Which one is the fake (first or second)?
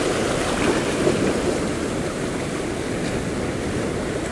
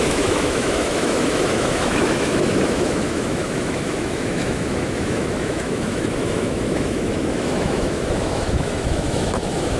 second